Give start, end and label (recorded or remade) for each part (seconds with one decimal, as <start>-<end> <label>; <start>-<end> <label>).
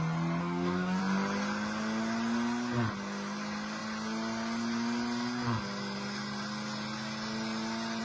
0.0-0.4 recorded; 0.4-1.0 remade; 1.0-8.0 recorded